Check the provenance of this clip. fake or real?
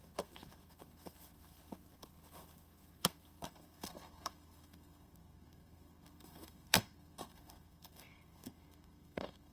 fake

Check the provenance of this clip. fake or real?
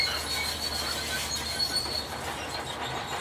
real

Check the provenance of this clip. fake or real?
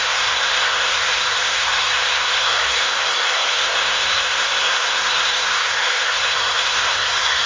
fake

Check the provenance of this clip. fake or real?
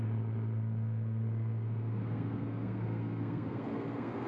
fake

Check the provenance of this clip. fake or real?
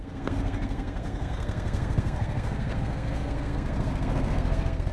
fake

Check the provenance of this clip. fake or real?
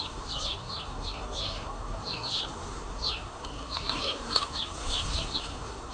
fake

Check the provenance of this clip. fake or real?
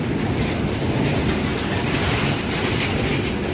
real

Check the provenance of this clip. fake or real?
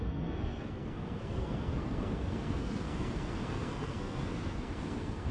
fake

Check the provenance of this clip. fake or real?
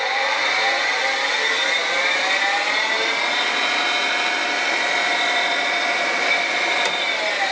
real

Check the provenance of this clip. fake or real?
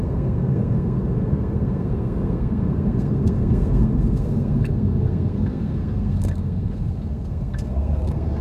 fake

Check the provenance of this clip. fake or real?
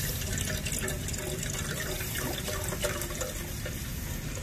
real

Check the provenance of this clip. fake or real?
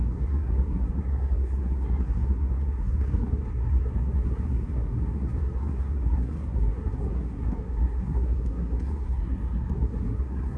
fake